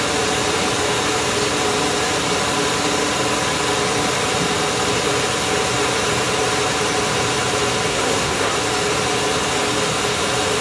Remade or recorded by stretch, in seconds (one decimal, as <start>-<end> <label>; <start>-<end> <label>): 0.0-7.9 recorded; 7.9-8.6 remade; 8.6-10.6 recorded